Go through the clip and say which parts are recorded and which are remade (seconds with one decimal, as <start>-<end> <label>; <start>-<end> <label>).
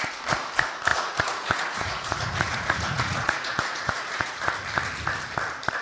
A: 0.0-0.9 recorded; 0.9-4.4 remade; 4.4-5.8 recorded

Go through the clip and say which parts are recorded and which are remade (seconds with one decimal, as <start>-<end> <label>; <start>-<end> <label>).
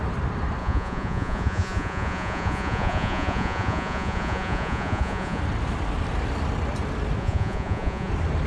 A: 0.0-0.6 recorded; 0.6-5.4 remade; 5.4-7.2 recorded; 7.2-8.1 remade; 8.1-8.5 recorded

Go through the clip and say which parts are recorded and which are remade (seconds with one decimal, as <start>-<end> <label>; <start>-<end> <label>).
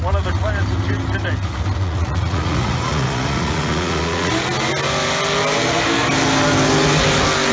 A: 0.0-1.8 recorded; 1.8-4.3 remade; 4.3-7.5 recorded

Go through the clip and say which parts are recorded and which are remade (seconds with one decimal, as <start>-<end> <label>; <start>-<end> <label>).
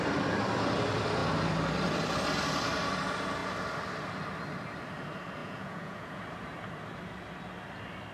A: 0.0-5.4 recorded; 5.4-6.2 remade; 6.2-8.1 recorded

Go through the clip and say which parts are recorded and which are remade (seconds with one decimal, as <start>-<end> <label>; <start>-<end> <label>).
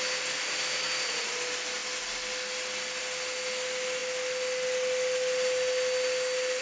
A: 0.0-6.6 recorded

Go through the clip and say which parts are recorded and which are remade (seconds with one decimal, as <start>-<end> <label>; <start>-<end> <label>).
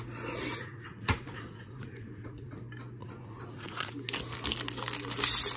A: 0.0-0.6 recorded; 0.6-2.6 remade; 2.6-3.0 recorded; 3.0-3.9 remade; 3.9-5.6 recorded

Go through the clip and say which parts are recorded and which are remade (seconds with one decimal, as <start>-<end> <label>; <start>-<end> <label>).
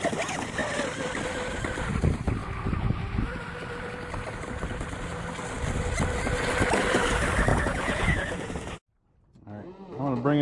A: 0.0-7.5 recorded; 7.5-8.5 remade; 8.5-10.4 recorded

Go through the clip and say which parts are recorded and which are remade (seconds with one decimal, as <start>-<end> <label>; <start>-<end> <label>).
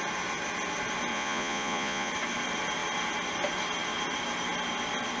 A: 0.0-1.1 recorded; 1.1-2.1 remade; 2.1-5.2 recorded